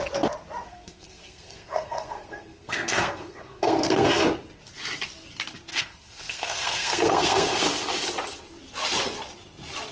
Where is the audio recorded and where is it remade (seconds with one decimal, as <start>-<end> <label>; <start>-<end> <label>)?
0.0-0.7 recorded; 0.7-4.2 remade; 4.2-5.7 recorded; 5.7-7.6 remade; 7.6-9.9 recorded